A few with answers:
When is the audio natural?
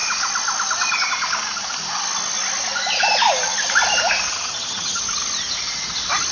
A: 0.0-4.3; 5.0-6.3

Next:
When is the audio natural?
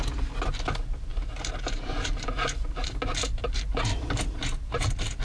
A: 0.0-1.1; 3.0-3.4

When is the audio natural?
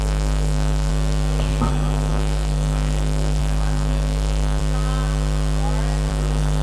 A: 0.9-1.7; 4.6-6.1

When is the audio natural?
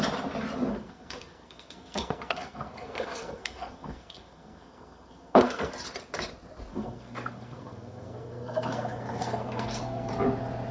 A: 0.0-0.7; 5.7-6.7; 10.1-10.7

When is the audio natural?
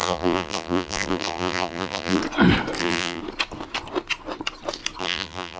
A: 2.2-2.8; 3.2-5.0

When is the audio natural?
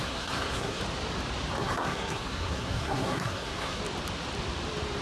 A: 0.8-1.6; 3.8-5.0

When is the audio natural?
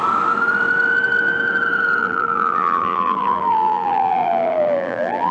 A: 0.0-2.0